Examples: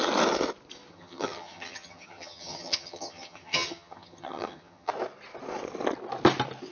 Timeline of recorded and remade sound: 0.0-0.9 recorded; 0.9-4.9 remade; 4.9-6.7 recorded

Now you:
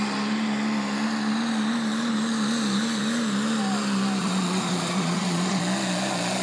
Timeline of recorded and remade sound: 0.0-4.2 recorded; 4.2-5.6 remade; 5.6-6.4 recorded

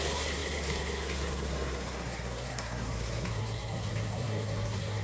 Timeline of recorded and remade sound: 0.0-5.0 remade

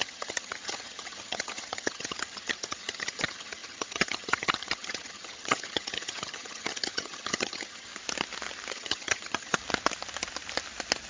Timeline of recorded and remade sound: 0.0-7.9 remade; 7.9-8.7 recorded; 8.7-9.6 remade; 9.6-11.1 recorded